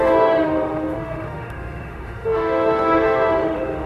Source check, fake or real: fake